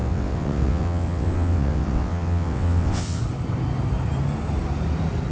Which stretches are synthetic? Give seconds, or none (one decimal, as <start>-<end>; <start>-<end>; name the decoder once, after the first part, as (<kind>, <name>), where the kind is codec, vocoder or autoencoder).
0.0-3.2 (vocoder, WaveNeXt)